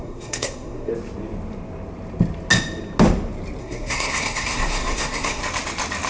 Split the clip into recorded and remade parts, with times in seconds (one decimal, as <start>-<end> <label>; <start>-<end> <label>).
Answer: 0.0-0.9 remade; 0.9-3.6 recorded; 3.6-5.4 remade; 5.4-6.1 recorded